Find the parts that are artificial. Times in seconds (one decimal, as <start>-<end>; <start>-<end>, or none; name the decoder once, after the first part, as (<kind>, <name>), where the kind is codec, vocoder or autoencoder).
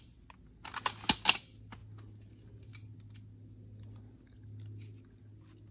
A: none